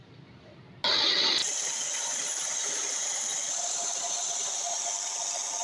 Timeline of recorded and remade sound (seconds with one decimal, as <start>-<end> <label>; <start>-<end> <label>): 0.0-1.4 recorded; 1.4-4.8 remade; 4.8-5.6 recorded